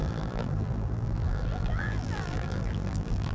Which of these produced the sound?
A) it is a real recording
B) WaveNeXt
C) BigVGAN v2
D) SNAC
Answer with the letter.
C